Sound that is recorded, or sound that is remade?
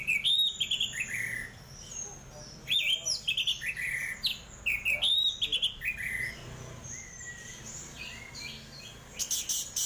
recorded